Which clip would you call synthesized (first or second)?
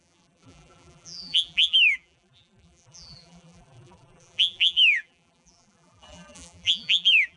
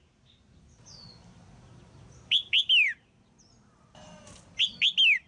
first